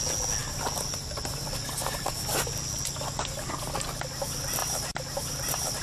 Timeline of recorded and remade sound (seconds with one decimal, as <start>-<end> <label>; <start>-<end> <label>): 0.0-4.6 recorded; 4.6-5.8 remade